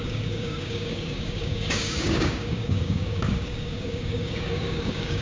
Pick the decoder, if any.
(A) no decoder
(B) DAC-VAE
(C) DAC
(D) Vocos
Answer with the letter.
C